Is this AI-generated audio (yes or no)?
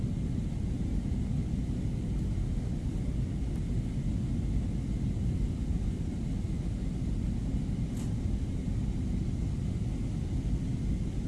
no